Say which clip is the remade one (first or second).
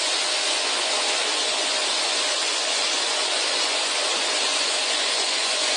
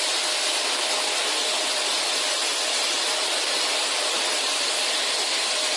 first